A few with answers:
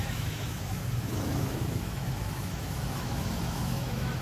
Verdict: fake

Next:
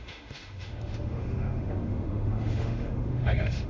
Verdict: fake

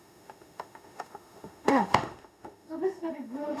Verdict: fake